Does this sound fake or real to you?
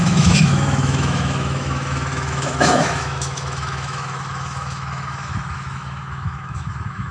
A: fake